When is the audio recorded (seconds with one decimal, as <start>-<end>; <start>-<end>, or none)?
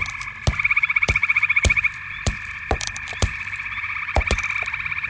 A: 0.0-1.2; 4.3-5.1